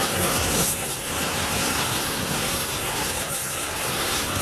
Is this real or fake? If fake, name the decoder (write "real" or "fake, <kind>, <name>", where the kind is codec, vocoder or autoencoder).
fake, codec, SNAC